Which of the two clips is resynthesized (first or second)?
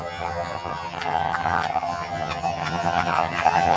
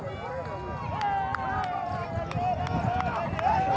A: first